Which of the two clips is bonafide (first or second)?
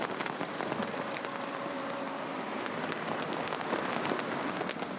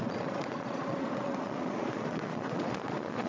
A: first